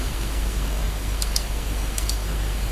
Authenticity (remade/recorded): remade